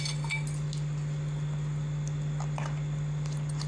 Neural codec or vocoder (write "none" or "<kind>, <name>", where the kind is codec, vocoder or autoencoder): none